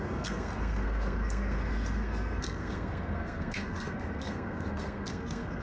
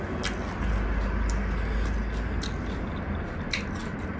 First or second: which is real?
second